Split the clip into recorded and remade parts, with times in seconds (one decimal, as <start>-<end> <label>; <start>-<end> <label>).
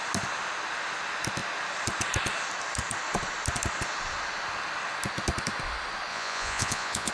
0.0-6.1 recorded; 6.1-7.1 remade